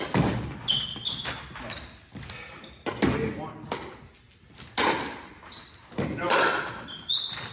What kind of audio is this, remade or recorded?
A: recorded